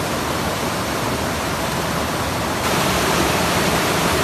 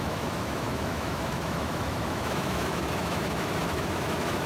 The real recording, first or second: first